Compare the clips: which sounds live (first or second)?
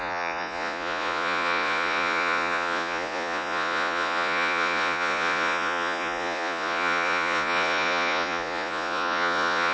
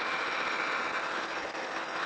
second